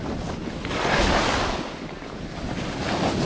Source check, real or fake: real